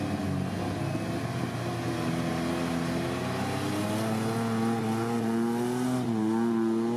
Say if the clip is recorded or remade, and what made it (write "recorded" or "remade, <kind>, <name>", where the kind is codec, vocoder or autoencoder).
recorded